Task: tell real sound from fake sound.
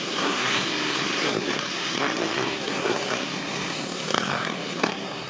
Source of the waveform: fake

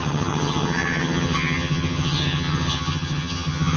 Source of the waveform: fake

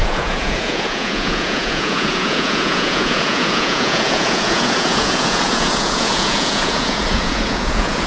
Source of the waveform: fake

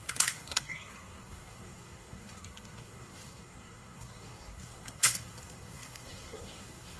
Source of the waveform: fake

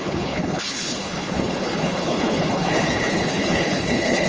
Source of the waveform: fake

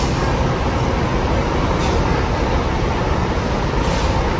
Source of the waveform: real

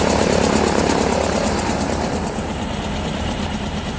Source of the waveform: real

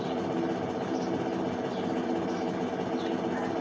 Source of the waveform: real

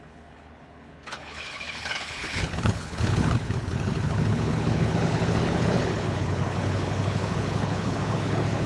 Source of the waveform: fake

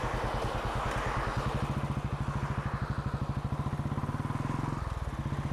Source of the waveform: real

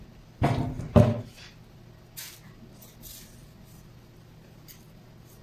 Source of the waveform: real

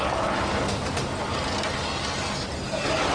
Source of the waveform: real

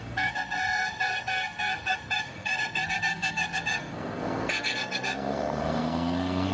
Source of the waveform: fake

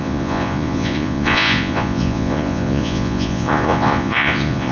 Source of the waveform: fake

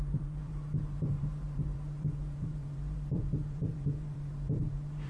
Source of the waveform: fake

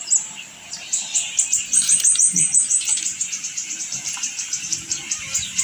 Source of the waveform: fake